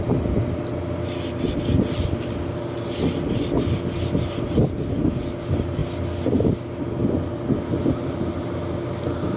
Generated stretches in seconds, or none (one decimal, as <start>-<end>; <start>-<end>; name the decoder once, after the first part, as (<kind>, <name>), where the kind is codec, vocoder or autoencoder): none